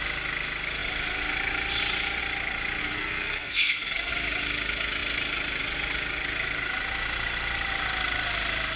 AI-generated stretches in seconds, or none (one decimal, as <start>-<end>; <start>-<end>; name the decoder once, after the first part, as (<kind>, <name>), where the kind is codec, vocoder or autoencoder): 2.8-4.1 (codec, SNAC)